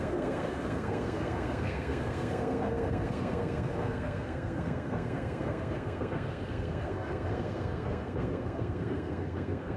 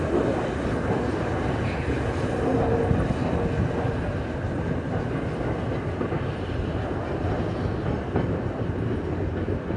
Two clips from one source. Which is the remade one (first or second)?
first